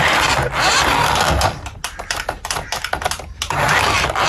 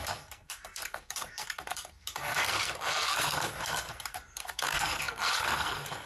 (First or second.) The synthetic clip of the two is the second